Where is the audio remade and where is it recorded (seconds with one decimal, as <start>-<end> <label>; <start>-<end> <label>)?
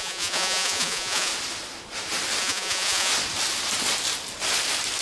0.0-1.3 remade; 1.3-2.4 recorded; 2.4-3.1 remade; 3.1-5.0 recorded